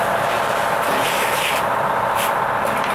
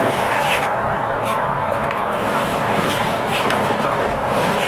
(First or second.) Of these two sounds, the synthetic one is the second